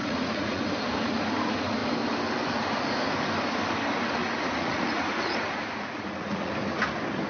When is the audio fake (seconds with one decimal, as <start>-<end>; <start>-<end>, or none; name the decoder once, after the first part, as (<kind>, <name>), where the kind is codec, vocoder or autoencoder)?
0.0-0.6 (vocoder, Vocos); 4.2-6.5